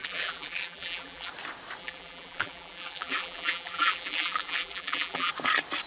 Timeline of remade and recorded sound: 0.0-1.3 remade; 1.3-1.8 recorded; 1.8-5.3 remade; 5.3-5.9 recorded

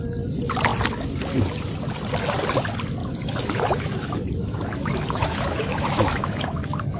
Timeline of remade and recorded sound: 0.0-3.0 recorded; 3.0-7.0 remade

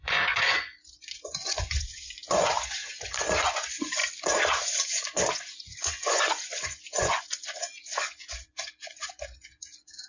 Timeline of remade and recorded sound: 0.0-4.0 remade; 4.0-5.3 recorded; 5.3-10.1 remade

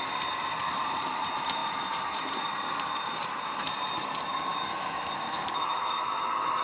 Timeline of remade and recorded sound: 0.0-4.5 recorded; 4.5-6.6 remade

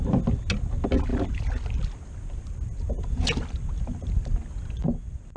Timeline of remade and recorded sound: 0.0-5.4 recorded